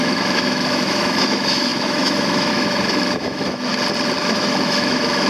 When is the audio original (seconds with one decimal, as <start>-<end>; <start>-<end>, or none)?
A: 3.7-4.2